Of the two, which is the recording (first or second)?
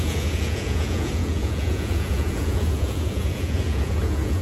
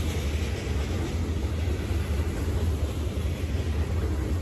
second